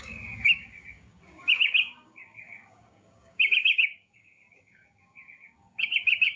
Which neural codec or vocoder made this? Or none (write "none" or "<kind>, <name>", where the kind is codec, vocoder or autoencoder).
codec, DAC